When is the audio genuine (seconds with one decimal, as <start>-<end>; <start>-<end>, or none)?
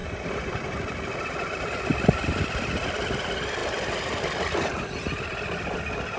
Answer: 1.8-3.6; 5.0-6.2